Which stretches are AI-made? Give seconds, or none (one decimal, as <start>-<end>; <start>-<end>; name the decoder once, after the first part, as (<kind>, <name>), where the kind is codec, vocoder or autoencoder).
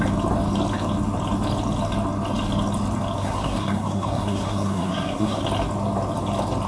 3.2-5.4 (codec, SNAC)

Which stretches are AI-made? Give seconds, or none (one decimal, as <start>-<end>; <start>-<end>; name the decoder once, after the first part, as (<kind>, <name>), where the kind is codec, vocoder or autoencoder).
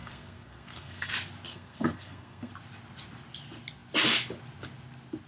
0.0-1.1 (codec, SNAC); 1.5-2.5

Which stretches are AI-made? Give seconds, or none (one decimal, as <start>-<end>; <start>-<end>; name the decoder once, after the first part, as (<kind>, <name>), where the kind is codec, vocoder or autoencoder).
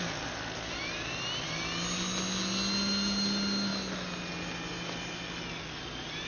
none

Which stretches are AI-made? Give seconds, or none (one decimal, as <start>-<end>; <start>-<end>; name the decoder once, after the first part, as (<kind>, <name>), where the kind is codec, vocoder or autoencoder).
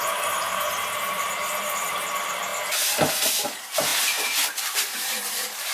0.0-0.5 (vocoder, BigVGAN v2); 1.0-2.5; 3.1-5.7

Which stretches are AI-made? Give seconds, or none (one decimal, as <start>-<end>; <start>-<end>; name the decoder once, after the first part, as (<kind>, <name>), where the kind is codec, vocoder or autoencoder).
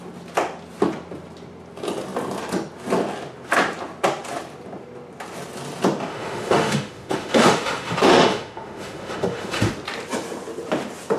6.1-9.7 (autoencoder, DAC-VAE)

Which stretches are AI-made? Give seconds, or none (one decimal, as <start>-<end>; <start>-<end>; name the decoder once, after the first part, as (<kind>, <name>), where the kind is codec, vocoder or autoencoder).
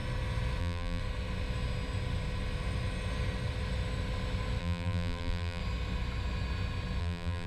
0.6-1.0 (vocoder, BigVGAN v2); 4.6-5.6; 7.0-7.5